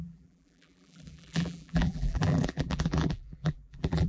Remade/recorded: remade